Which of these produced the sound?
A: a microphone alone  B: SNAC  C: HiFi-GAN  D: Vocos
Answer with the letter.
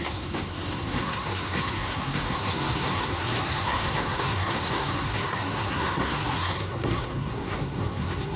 B